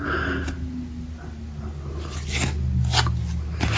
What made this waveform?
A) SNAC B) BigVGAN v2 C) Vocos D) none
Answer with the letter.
D